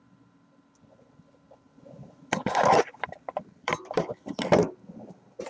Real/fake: fake